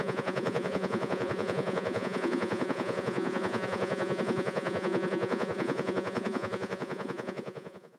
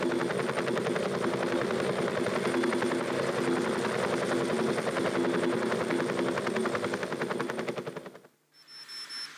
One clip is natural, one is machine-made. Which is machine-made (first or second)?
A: first